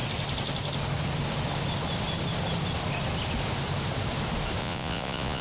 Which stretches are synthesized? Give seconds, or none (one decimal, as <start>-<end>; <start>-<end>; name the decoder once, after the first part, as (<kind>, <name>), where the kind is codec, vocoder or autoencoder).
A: 4.6-5.4 (vocoder, Vocos)